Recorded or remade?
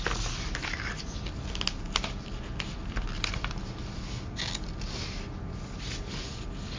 recorded